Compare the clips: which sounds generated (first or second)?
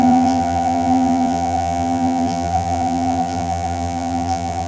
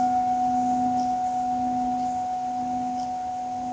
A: first